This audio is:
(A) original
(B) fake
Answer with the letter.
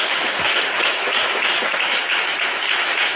B